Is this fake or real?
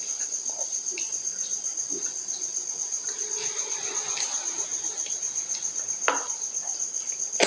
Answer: real